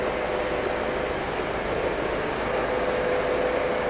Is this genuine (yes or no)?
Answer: yes